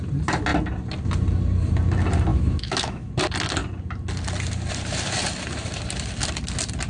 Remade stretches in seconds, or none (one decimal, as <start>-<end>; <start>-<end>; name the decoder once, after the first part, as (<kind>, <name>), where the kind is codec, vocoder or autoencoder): 2.3-3.1 (autoencoder, DAC-VAE)